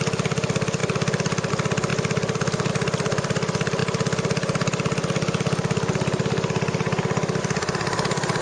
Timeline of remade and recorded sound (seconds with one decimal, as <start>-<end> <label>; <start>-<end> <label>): 0.0-8.4 recorded